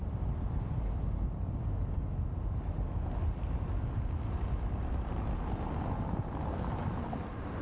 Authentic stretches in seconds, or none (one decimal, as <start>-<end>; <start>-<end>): 0.0-7.6